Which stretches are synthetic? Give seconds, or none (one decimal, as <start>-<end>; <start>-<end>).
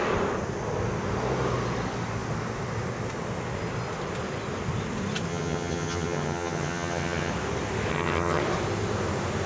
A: 5.3-7.3; 7.9-8.4